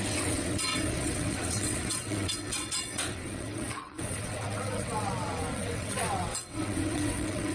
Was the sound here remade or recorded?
remade